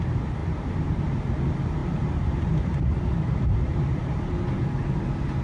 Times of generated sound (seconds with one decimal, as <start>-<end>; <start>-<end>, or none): 0.4-1.3; 1.8-4.3